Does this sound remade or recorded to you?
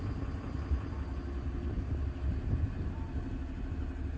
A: recorded